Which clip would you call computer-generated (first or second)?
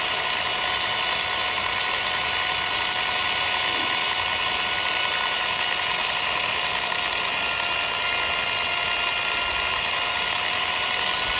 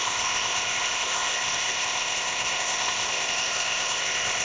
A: second